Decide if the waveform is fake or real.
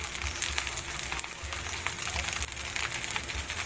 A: real